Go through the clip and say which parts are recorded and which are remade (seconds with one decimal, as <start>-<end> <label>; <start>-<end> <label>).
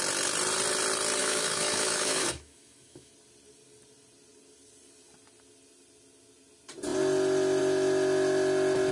0.0-1.2 recorded; 1.2-3.1 remade; 3.1-8.9 recorded